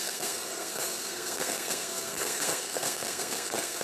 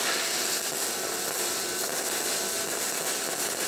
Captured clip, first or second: second